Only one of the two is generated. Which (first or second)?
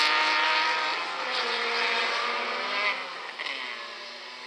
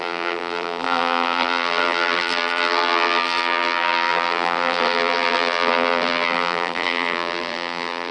second